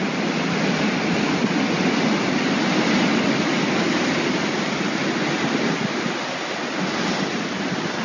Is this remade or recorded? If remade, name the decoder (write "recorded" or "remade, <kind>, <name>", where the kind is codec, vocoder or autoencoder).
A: recorded